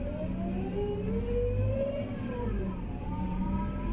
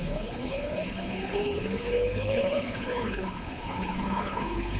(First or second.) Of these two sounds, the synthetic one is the second